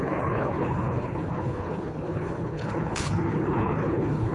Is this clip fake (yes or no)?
yes